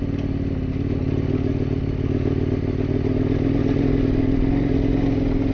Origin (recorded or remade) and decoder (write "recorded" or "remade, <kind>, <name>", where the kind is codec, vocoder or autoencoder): recorded